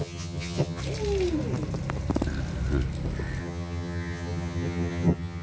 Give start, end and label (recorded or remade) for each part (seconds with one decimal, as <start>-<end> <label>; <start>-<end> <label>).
0.0-0.8 remade; 0.8-3.4 recorded; 3.4-5.4 remade